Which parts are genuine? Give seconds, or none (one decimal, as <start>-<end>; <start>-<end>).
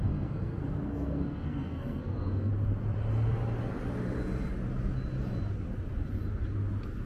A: 2.5-7.1